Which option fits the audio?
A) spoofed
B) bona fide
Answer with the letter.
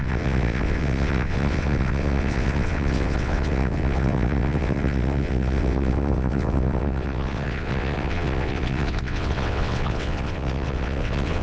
A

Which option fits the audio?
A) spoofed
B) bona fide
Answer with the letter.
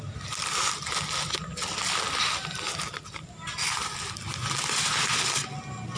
B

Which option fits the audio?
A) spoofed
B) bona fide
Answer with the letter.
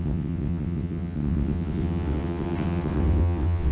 A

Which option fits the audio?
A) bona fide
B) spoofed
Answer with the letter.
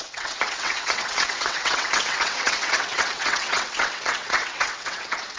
B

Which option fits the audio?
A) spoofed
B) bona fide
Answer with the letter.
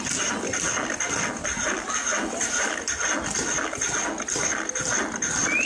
B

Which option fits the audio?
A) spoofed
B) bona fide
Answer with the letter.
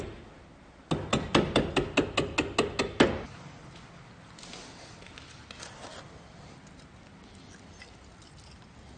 B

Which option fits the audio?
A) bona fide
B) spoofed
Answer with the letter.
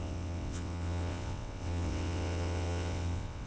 B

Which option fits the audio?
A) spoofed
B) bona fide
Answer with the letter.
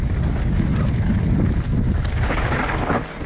B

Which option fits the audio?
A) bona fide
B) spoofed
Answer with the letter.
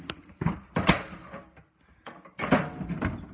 A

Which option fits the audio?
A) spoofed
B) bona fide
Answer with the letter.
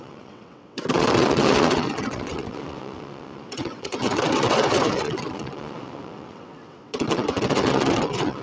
A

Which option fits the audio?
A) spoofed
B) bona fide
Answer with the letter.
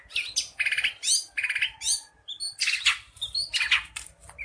B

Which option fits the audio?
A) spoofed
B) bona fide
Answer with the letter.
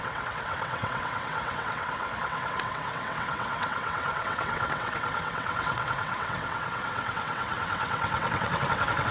A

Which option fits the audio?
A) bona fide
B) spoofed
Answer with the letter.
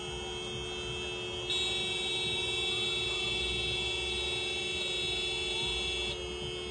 A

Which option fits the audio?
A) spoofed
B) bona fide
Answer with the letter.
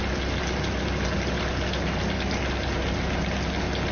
B